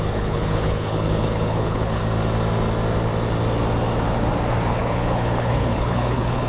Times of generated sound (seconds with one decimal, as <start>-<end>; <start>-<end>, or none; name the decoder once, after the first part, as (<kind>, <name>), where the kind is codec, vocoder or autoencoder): 0.0-2.0 (codec, HILCodec); 4.8-6.5